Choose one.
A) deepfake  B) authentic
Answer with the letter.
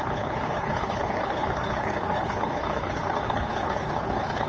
A